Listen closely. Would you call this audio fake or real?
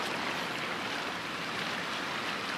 real